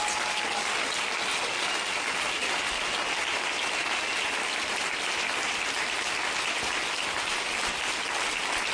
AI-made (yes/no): no